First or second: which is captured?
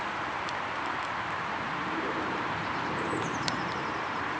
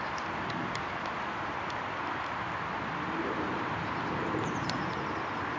second